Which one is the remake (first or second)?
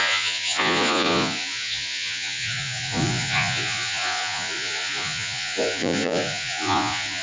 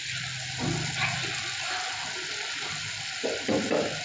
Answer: first